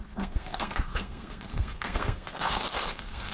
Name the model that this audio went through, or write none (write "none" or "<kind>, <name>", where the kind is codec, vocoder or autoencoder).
codec, SNAC